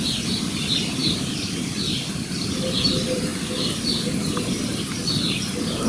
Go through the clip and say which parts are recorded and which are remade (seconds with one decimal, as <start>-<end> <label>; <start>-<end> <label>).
0.0-1.0 remade; 1.0-2.0 recorded; 2.0-5.9 remade